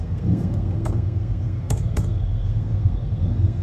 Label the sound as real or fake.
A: fake